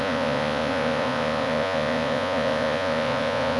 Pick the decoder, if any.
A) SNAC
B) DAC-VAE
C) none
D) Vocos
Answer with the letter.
D